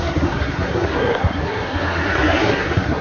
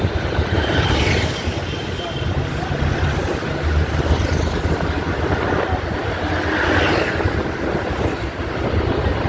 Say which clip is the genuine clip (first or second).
second